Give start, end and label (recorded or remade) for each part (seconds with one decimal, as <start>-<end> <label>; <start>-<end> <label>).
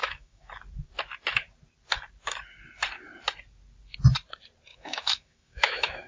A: 0.0-0.5 remade; 0.5-4.7 recorded; 4.7-6.1 remade